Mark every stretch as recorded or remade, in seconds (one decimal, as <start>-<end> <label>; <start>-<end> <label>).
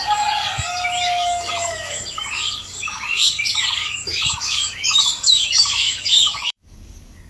0.0-7.3 remade